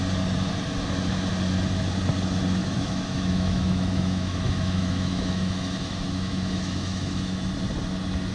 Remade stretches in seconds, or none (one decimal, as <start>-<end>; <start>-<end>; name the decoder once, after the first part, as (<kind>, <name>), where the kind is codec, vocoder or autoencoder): 2.6-7.5 (autoencoder, DAC-VAE)